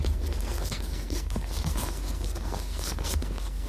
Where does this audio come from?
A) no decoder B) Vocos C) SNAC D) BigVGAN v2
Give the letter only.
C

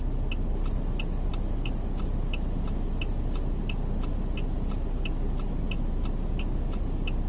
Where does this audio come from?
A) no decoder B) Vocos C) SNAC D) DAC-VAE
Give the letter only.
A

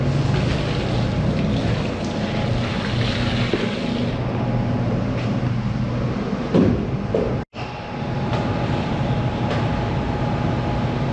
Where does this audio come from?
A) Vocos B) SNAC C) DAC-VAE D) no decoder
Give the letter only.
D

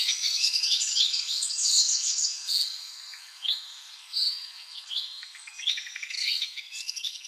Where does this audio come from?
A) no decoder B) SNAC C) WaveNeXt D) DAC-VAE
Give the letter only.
B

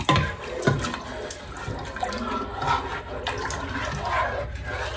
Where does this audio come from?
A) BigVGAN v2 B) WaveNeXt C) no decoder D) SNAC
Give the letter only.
C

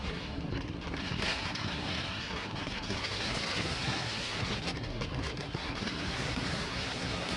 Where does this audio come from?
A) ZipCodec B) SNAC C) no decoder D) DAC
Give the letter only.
B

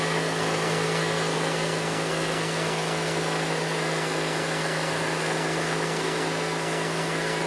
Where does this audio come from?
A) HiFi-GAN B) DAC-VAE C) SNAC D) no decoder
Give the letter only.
C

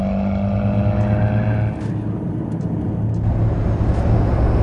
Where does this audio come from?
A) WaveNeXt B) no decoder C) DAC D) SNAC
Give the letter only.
B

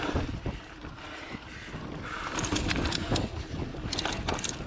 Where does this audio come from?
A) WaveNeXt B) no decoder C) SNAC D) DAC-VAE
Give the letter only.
B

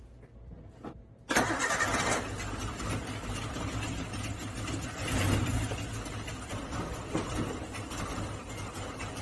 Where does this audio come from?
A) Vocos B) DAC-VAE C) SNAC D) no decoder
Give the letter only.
D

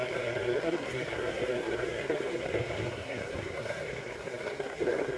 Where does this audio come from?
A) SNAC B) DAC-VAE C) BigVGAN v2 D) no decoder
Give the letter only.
A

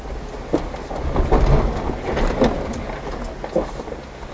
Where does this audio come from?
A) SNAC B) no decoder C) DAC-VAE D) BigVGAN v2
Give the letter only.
B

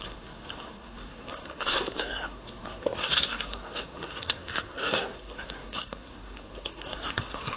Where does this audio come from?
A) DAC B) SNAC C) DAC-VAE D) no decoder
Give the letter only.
B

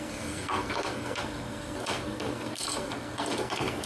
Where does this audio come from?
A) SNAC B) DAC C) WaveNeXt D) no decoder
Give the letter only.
A